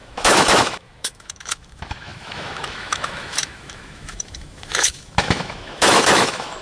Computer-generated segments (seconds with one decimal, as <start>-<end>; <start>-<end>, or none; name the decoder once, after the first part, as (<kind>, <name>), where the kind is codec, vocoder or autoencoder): 0.0-6.6 (autoencoder, DAC-VAE)